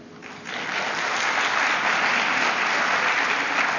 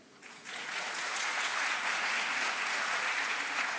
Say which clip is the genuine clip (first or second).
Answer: first